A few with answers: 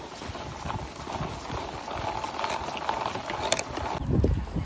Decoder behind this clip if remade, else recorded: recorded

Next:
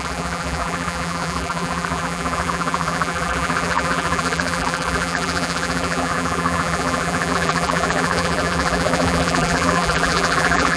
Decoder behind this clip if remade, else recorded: remade, vocoder, BigVGAN v2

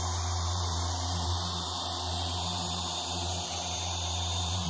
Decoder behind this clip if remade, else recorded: remade, vocoder, BigVGAN v2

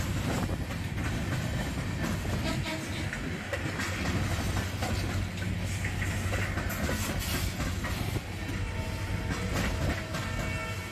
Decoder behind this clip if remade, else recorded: recorded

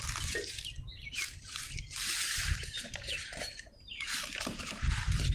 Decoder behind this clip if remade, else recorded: remade, vocoder, BigVGAN v2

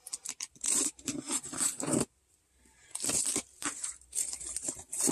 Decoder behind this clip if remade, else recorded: remade, vocoder, BigVGAN v2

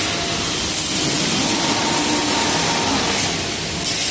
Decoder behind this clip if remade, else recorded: recorded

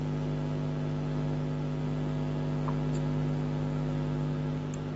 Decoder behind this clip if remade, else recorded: recorded